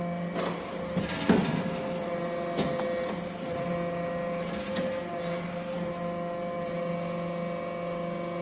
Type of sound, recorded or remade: recorded